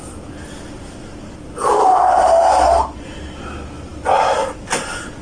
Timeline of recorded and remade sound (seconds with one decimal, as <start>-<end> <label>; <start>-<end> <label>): 0.0-5.2 recorded